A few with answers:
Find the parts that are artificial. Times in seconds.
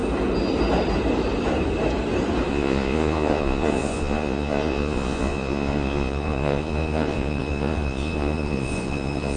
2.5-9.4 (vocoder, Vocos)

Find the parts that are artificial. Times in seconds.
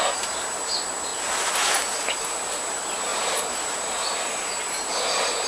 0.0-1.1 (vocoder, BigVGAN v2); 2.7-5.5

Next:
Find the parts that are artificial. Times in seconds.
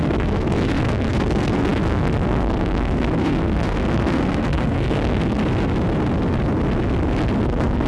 0.0-5.4 (codec, SNAC); 7.4-7.9